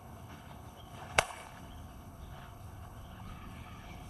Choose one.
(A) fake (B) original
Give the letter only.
A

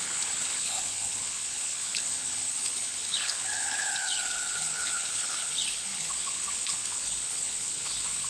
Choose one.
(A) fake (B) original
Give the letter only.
A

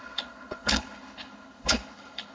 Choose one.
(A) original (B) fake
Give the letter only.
B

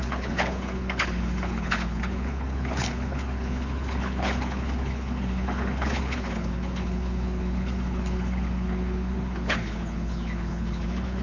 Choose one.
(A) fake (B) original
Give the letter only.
A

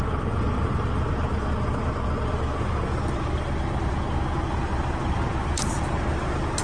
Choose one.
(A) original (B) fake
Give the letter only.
A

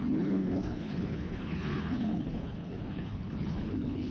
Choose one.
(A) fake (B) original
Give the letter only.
A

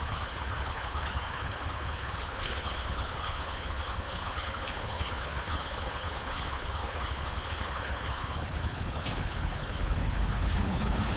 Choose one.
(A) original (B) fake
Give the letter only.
B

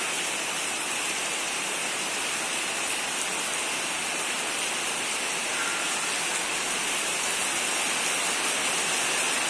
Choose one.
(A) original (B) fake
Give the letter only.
A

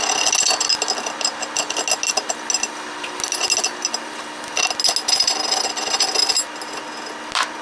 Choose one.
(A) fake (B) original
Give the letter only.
B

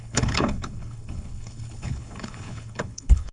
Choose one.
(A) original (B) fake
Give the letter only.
B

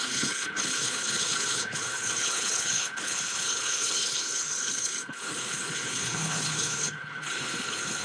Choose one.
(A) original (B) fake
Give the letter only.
B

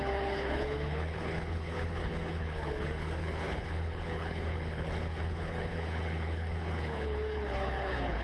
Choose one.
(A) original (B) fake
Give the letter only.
B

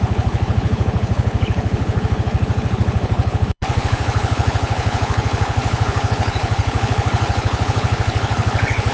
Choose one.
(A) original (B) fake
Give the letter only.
B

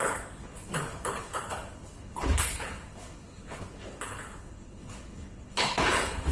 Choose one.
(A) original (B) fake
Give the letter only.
B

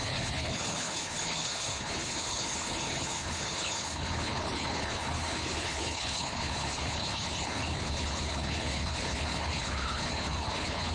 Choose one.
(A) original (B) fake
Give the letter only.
B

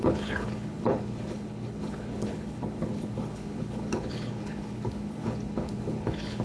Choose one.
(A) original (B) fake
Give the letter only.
B